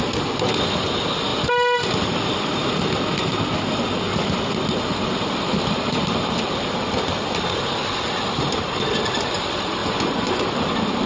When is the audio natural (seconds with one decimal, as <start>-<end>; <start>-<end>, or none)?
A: 0.0-9.8; 10.4-11.1